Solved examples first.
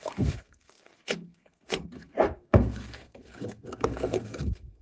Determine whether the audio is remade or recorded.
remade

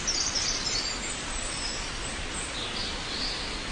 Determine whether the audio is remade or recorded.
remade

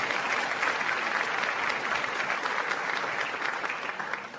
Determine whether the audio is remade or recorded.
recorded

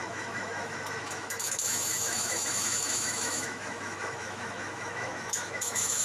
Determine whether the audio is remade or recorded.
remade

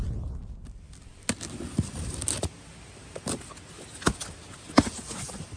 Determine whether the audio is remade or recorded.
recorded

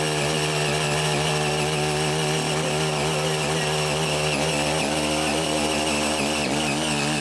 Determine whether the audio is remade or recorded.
recorded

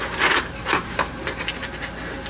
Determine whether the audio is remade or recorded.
recorded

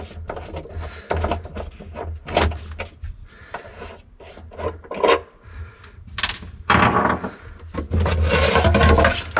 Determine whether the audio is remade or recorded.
recorded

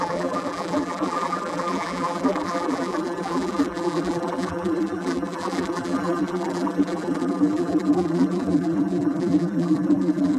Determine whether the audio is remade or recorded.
remade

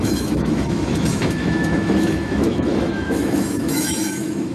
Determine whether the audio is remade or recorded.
remade